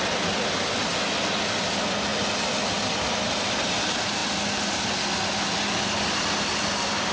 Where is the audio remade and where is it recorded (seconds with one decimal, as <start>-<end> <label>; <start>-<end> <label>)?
0.0-7.1 recorded